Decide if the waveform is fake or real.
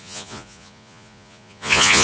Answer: fake